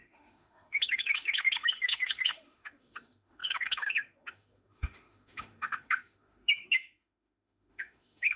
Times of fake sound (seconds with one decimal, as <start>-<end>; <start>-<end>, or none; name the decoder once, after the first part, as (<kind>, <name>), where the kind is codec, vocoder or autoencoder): 0.0-8.4 (autoencoder, DAC-VAE)